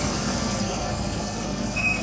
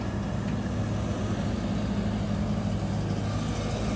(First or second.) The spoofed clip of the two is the first